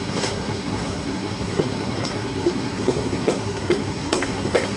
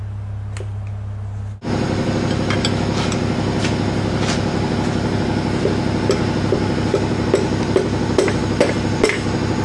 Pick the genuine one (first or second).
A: second